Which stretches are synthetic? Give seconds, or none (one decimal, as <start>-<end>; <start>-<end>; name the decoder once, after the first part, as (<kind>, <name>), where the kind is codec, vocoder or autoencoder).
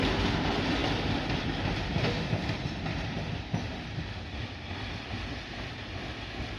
none